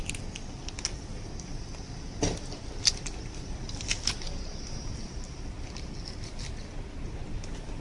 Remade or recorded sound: recorded